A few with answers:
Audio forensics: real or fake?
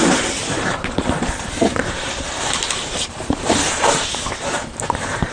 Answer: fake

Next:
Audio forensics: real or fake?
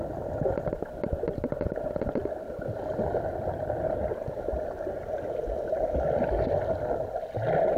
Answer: real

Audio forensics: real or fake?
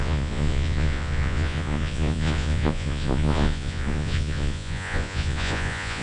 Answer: fake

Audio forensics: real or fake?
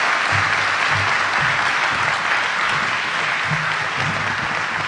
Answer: real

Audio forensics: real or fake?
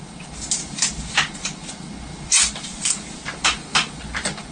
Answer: real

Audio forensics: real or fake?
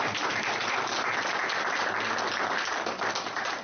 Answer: real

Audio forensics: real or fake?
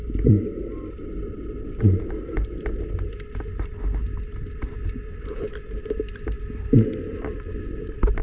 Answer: real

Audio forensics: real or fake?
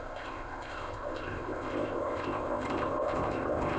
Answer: fake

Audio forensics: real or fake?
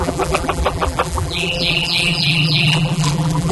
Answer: fake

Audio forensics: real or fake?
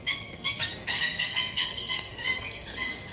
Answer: fake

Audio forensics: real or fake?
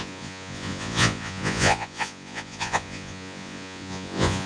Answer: fake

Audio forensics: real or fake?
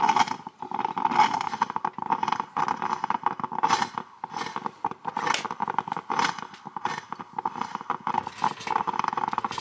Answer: real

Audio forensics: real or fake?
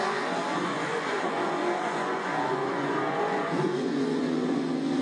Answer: fake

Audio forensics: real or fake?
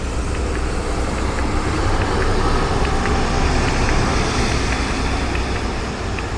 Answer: real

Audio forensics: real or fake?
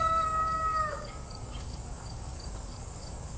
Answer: fake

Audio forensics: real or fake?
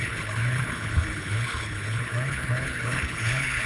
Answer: fake